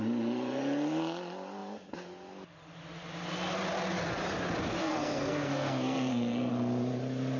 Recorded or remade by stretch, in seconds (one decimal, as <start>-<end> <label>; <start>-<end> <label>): 0.0-4.8 recorded; 4.8-6.5 remade; 6.5-7.4 recorded